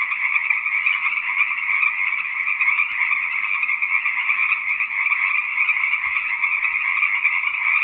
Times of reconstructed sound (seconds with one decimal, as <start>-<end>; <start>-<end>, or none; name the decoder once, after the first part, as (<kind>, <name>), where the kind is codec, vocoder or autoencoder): none